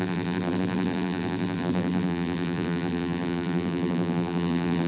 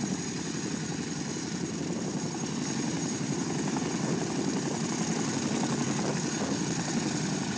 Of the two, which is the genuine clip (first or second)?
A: second